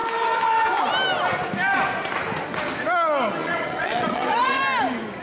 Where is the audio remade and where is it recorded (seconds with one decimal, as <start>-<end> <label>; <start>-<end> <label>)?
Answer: 0.0-3.4 recorded; 3.4-4.6 remade; 4.6-5.2 recorded

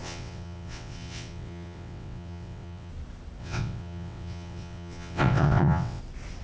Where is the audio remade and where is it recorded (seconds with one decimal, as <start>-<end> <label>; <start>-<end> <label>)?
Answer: 0.0-2.9 remade; 2.9-3.4 recorded; 3.4-6.0 remade; 6.0-6.4 recorded

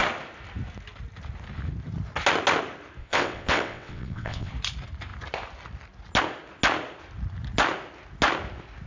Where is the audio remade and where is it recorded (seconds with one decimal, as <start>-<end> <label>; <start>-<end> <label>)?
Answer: 0.0-3.0 recorded; 3.0-4.5 remade; 4.5-8.9 recorded